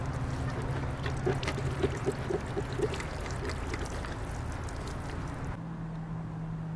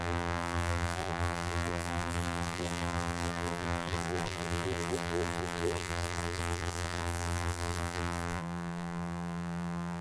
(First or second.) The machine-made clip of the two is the second